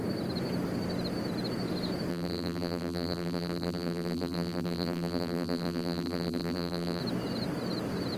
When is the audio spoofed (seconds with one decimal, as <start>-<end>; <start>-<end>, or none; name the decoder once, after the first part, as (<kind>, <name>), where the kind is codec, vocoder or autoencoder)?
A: 2.1-7.0 (vocoder, BigVGAN v2)